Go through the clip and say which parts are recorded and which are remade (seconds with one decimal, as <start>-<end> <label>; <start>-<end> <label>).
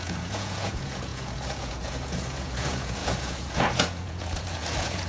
0.0-5.1 remade